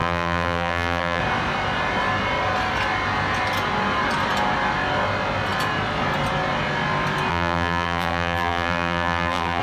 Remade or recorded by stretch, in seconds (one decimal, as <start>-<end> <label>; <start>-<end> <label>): 0.0-1.2 remade; 1.2-7.3 recorded; 7.3-9.6 remade